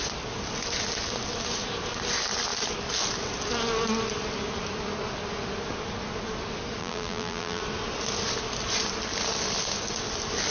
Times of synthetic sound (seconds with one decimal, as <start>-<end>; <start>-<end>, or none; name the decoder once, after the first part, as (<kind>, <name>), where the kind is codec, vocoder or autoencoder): 6.8-7.6 (vocoder, BigVGAN v2)